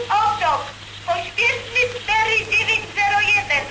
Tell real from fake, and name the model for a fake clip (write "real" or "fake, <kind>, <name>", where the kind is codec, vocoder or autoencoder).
real